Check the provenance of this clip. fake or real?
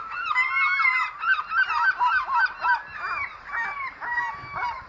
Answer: real